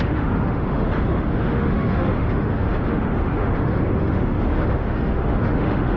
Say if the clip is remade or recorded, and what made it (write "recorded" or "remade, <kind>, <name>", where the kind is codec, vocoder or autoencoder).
remade, autoencoder, DAC-VAE